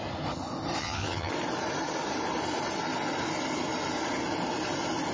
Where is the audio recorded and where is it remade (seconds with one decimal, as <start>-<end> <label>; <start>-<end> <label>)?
0.0-0.8 recorded; 0.8-1.3 remade; 1.3-5.1 recorded